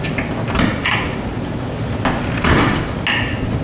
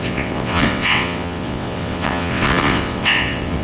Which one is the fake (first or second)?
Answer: second